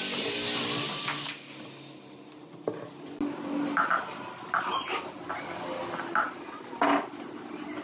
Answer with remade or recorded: recorded